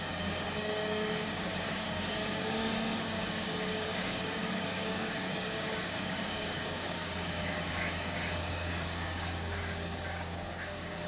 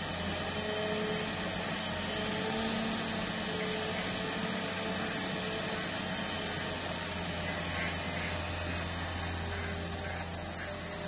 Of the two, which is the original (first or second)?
second